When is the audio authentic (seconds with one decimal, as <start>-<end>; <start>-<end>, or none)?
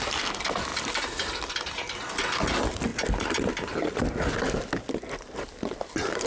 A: 0.0-2.9; 3.5-6.3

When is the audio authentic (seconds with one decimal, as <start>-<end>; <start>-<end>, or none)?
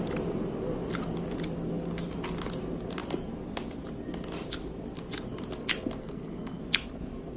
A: 0.0-6.0; 6.6-7.4